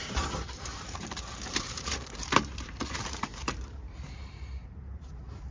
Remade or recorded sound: remade